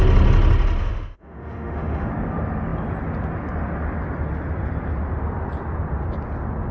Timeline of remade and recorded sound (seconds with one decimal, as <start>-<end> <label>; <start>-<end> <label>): 0.0-0.8 recorded; 0.8-2.1 remade; 2.1-6.7 recorded